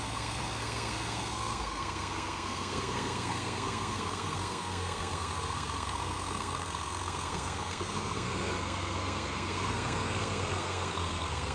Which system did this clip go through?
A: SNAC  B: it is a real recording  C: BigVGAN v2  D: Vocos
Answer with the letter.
A